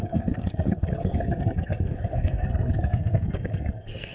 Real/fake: fake